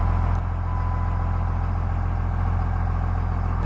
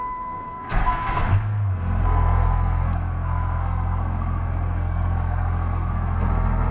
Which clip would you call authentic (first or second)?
first